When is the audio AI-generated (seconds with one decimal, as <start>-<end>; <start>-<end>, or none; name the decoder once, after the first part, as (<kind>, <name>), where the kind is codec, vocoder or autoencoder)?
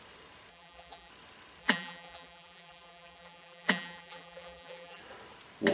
0.5-1.1 (vocoder, BigVGAN v2); 1.6-5.0